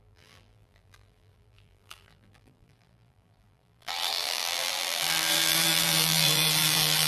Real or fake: fake